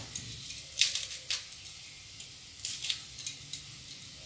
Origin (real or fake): real